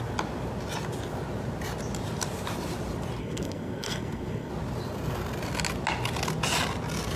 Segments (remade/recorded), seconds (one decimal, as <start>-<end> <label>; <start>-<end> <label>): 0.0-3.2 recorded; 3.2-4.5 remade; 4.5-7.2 recorded